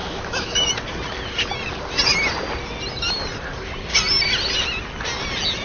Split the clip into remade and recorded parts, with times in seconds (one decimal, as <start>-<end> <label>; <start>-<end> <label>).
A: 0.0-0.7 remade; 0.7-5.6 recorded